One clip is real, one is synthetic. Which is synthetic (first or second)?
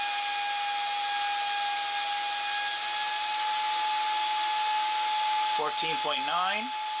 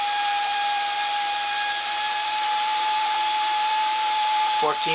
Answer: second